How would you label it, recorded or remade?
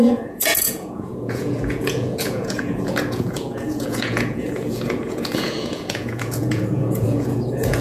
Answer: remade